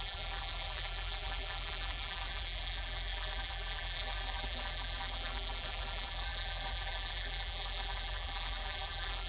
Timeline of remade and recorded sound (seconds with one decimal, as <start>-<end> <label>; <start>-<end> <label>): 0.0-9.3 remade